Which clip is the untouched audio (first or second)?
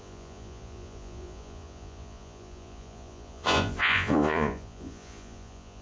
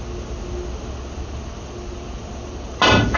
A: second